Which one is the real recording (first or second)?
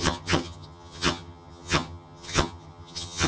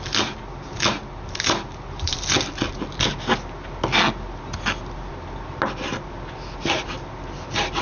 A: second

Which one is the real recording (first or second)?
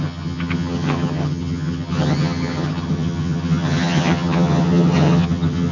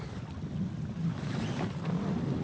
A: second